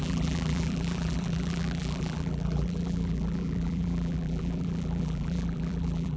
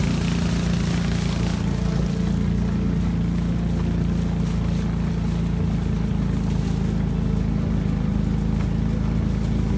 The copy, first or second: first